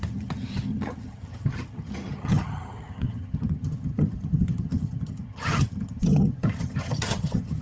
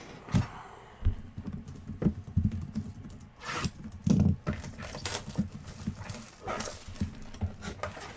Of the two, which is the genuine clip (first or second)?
second